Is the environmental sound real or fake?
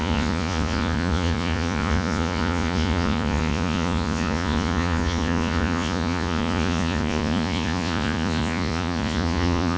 fake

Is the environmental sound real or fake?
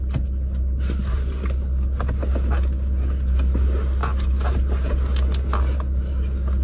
real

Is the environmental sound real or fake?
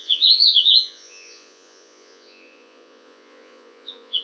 fake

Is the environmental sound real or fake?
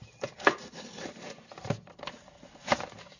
fake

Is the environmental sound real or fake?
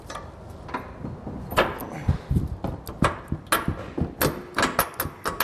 real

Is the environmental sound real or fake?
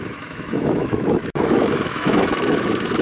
fake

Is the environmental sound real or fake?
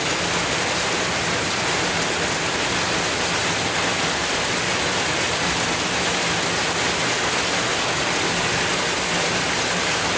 real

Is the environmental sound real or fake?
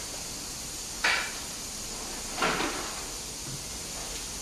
real